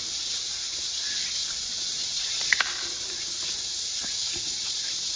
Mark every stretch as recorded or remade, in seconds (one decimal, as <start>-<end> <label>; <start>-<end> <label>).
0.0-1.4 recorded; 1.4-2.6 remade; 2.6-5.2 recorded